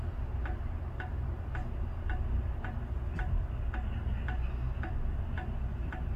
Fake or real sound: real